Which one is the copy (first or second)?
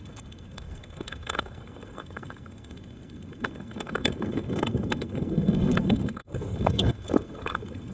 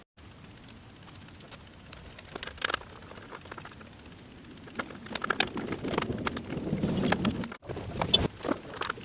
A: first